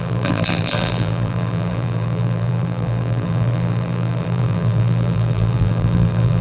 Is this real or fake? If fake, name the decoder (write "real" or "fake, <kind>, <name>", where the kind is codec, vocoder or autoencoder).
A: fake, vocoder, BigVGAN v2